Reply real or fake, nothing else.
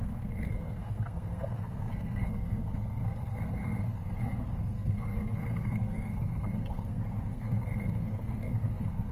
fake